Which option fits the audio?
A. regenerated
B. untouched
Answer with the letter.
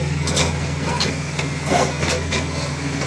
A